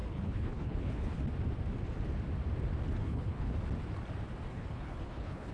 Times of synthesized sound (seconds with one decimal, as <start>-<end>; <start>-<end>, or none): 0.0-1.2; 3.0-3.5; 4.5-5.5